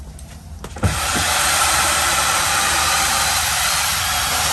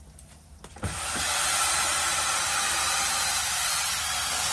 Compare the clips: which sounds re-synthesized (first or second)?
first